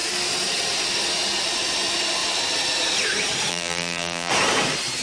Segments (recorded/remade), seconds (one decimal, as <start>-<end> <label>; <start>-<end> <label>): 0.0-3.5 recorded; 3.5-4.3 remade; 4.3-5.0 recorded